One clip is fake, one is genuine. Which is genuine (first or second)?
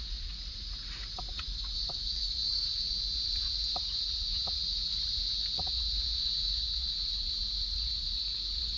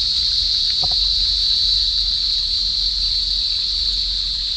second